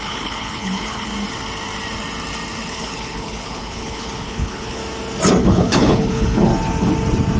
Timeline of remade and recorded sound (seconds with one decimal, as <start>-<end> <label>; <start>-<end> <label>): 0.0-1.1 remade; 1.1-2.7 recorded; 2.7-4.8 remade; 4.8-5.4 recorded; 5.4-6.5 remade; 6.5-7.4 recorded